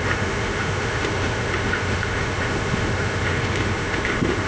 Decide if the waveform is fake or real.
fake